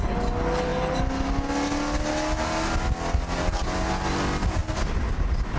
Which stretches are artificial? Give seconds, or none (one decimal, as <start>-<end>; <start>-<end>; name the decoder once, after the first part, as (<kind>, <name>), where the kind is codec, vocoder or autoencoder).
none